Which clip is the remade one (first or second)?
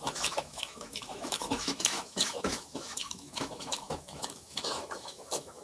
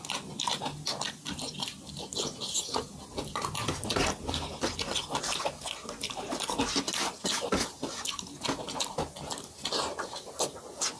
first